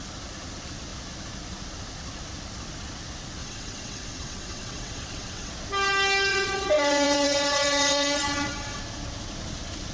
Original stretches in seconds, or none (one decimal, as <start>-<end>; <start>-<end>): 0.0-3.4; 5.5-6.3; 8.8-9.9